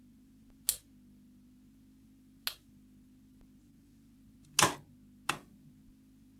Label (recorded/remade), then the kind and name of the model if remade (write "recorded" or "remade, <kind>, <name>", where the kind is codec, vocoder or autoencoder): recorded